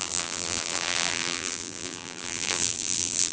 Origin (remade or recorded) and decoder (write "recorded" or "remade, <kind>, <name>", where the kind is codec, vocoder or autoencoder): remade, vocoder, BigVGAN v2